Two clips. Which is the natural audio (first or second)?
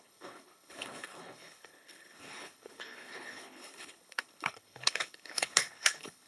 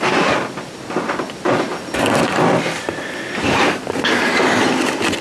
second